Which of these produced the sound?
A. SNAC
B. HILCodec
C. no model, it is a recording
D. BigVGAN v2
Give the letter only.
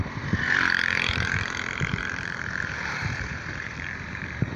D